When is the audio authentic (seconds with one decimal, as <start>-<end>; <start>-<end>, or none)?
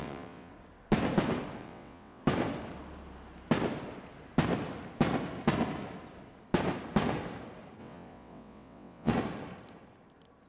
0.5-1.6; 2.2-7.8; 9.1-10.5